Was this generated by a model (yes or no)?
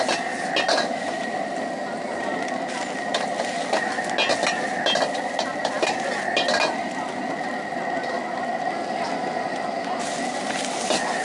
no